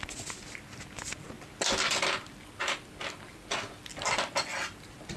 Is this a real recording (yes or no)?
yes